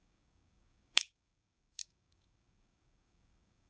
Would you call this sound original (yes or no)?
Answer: no